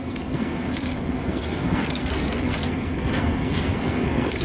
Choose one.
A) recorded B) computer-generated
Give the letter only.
B